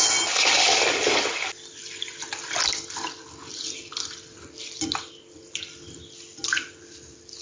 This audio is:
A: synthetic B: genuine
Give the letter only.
B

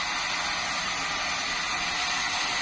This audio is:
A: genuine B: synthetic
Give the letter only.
A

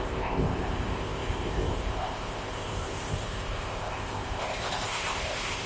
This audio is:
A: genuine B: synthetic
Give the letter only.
B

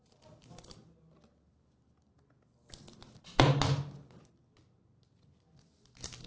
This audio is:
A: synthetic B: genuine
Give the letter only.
B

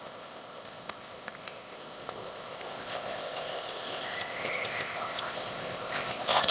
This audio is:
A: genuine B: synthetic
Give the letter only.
B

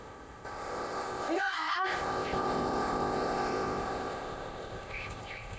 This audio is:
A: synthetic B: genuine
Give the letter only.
A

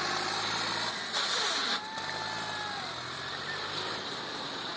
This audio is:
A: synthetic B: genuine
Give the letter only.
B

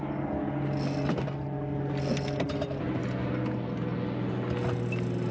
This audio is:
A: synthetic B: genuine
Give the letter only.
B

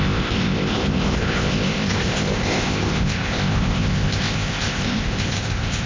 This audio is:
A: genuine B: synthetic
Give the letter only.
B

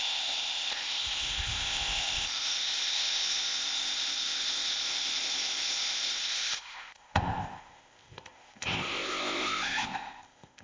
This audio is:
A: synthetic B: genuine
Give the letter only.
A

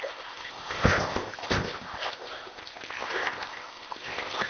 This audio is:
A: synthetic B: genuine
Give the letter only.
A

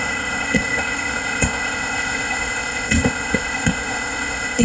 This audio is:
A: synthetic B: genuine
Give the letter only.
A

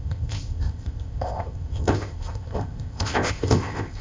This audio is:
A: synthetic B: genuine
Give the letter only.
A